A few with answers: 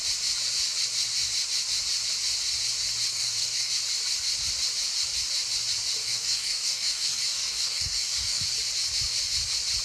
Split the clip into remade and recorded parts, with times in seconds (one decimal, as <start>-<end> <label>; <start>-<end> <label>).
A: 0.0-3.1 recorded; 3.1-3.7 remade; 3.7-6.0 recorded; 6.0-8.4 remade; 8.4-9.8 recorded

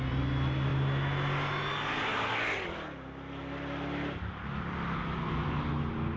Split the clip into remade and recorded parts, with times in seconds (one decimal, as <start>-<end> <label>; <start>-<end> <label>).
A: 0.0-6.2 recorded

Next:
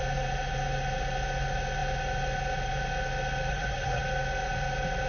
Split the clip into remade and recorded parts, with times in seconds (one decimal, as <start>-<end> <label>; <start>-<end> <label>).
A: 0.0-3.5 recorded; 3.5-4.0 remade; 4.0-5.1 recorded

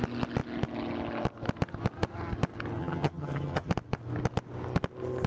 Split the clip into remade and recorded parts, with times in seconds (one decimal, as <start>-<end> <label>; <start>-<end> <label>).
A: 0.0-2.8 recorded; 2.8-3.7 remade; 3.7-5.3 recorded

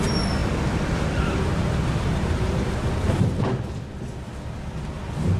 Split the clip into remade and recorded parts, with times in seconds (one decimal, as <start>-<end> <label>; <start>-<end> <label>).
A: 0.0-0.4 recorded; 0.4-3.4 remade; 3.4-5.4 recorded

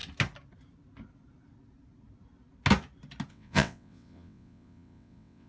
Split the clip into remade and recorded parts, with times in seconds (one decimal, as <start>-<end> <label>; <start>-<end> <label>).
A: 0.0-3.3 recorded; 3.3-5.5 remade